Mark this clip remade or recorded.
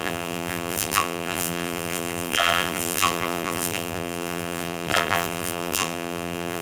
remade